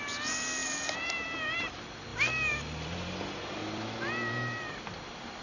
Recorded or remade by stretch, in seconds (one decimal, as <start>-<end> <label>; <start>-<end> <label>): 0.0-0.6 recorded; 0.6-1.6 remade; 1.6-2.1 recorded; 2.1-5.4 remade

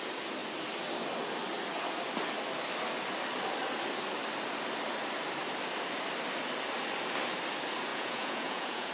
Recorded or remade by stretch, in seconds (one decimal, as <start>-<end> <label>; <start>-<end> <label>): 0.0-7.9 recorded; 7.9-8.9 remade

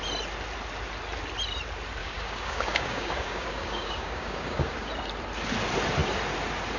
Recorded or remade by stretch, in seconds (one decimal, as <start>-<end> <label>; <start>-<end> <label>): 0.0-2.0 recorded; 2.0-4.9 remade; 4.9-6.8 recorded

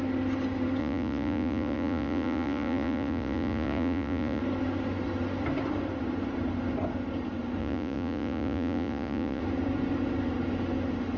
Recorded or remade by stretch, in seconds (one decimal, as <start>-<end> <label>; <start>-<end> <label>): 0.0-0.8 recorded; 0.8-4.4 remade; 4.4-7.6 recorded; 7.6-9.4 remade; 9.4-11.2 recorded

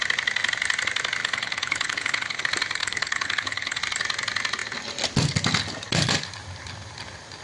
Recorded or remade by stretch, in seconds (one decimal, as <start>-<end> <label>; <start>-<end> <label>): 0.0-1.2 recorded; 1.2-2.4 remade; 2.4-2.8 recorded; 2.8-3.8 remade; 3.8-7.4 recorded

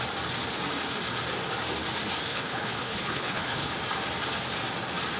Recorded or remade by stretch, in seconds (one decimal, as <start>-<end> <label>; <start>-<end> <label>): 0.0-2.3 recorded; 2.3-3.7 remade; 3.7-5.2 recorded